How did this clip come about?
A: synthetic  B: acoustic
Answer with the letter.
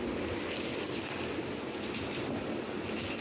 B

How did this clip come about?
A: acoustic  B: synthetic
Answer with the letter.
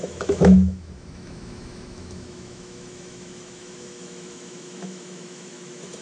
B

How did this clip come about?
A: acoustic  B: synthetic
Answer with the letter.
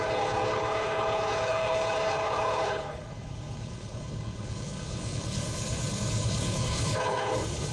B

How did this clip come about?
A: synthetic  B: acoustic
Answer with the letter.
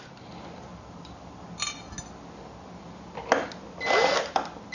B